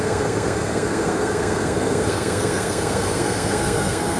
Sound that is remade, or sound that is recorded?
remade